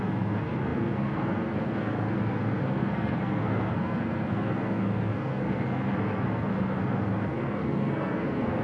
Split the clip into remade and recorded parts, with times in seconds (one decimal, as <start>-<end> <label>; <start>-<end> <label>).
0.0-8.6 remade